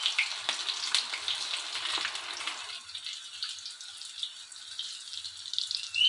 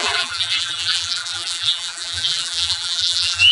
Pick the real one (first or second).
first